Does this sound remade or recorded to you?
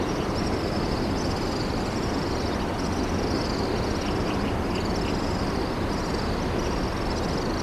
recorded